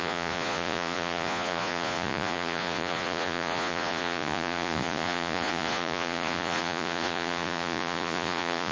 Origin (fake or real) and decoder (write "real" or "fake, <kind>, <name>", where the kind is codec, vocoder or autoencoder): fake, vocoder, Vocos